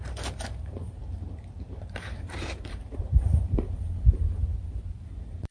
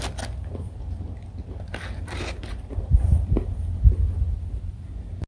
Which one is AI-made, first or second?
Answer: first